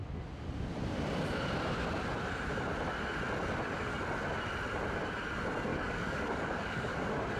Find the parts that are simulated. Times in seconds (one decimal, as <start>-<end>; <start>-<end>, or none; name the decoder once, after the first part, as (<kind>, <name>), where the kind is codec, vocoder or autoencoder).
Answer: 5.7-7.0 (codec, DAC)